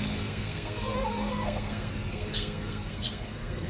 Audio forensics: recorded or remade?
remade